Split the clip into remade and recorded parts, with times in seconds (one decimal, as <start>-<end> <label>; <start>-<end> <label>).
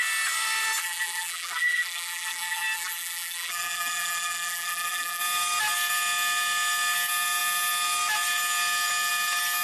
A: 0.0-0.8 recorded; 0.8-5.2 remade; 5.2-9.6 recorded